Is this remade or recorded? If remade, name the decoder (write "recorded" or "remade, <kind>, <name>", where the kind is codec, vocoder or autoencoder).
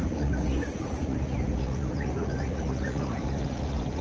remade, vocoder, Vocos